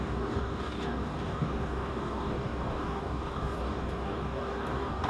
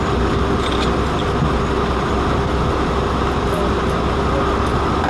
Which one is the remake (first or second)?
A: first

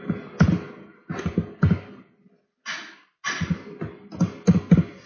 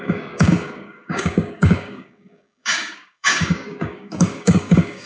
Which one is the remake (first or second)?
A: second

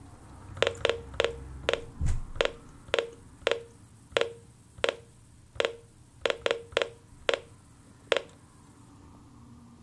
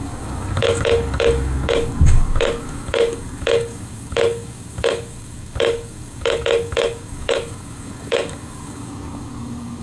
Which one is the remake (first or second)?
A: second